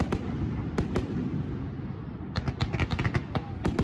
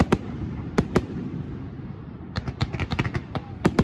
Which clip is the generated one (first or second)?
second